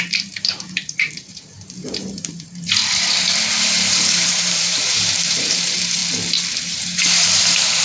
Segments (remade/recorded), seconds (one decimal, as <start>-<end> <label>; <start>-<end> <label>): 0.0-2.8 remade; 2.8-3.5 recorded; 3.5-6.0 remade; 6.0-6.5 recorded; 6.5-7.8 remade